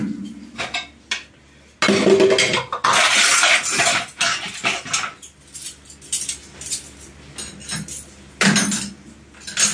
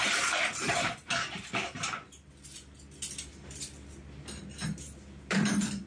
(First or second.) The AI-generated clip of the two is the second